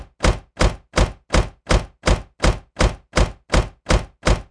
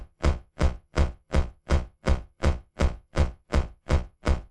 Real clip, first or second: first